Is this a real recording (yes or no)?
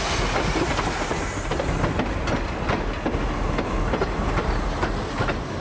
yes